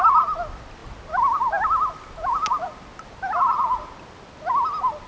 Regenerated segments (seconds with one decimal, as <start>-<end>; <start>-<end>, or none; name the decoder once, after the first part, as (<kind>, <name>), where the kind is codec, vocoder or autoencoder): none